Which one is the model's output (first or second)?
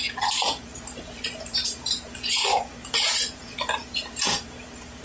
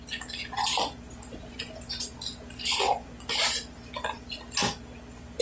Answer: first